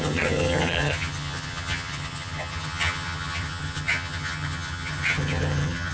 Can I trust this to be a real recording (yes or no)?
no